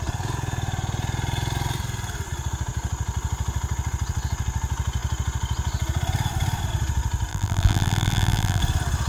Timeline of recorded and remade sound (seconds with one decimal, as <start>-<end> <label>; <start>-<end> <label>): 0.0-7.3 recorded; 7.3-8.6 remade; 8.6-9.1 recorded